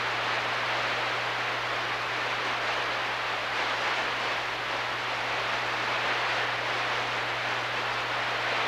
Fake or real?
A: real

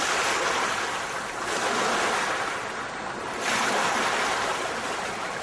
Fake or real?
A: real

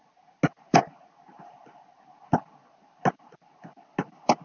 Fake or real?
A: real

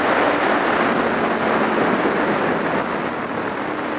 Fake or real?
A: real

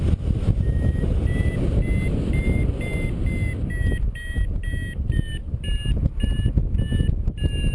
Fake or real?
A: real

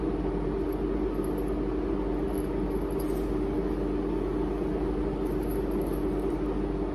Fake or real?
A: real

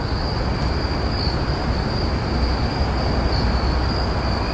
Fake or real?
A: real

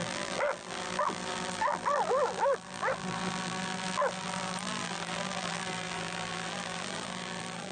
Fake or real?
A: fake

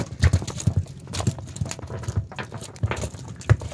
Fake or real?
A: real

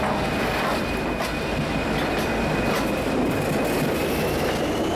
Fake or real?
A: real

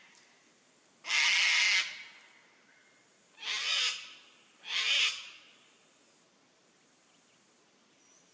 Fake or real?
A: real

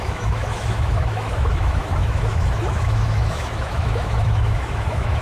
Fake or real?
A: fake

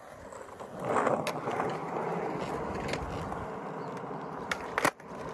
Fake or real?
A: real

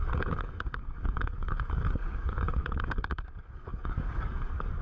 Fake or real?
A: fake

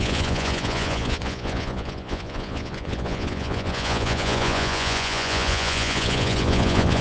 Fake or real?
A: fake